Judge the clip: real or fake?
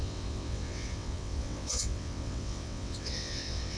fake